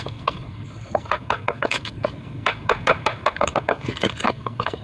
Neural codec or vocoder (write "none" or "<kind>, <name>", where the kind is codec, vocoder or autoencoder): codec, SNAC